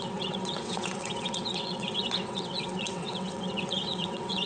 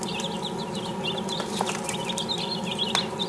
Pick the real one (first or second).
second